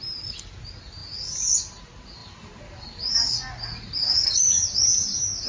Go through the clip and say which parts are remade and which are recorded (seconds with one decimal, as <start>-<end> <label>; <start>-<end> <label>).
0.0-5.5 recorded